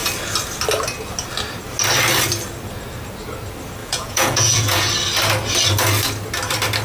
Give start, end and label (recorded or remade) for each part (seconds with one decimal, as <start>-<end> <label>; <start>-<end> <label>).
0.0-3.8 recorded; 3.8-4.9 remade; 4.9-6.8 recorded